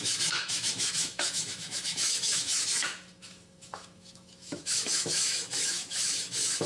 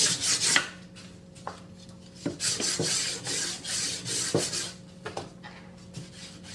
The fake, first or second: first